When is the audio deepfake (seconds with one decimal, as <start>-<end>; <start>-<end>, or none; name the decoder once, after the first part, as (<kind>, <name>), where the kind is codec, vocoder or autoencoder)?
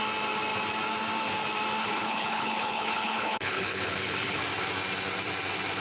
1.8-4.4 (codec, HILCodec)